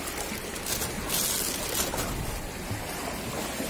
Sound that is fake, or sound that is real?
real